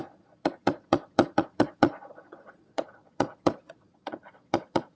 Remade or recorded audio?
remade